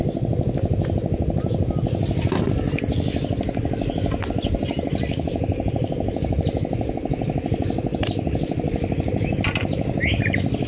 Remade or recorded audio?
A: recorded